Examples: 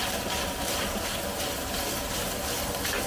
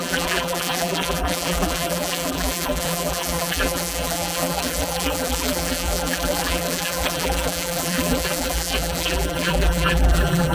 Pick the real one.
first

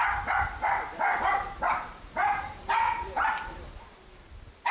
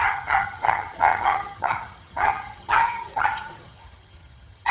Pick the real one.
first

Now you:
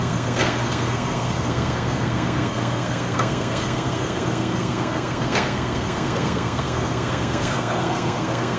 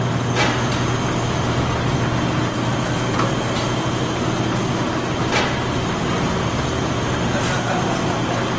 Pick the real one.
second